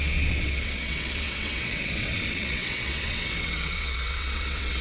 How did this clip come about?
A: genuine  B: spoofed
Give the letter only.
B